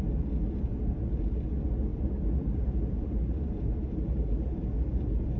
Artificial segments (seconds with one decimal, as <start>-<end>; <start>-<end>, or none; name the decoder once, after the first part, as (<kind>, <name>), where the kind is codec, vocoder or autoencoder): 0.7-1.5 (vocoder, BigVGAN v2); 1.9-5.4